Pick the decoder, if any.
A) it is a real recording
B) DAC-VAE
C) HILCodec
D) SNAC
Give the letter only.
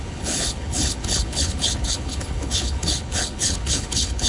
C